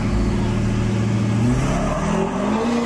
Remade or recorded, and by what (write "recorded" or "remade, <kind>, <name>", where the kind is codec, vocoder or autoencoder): recorded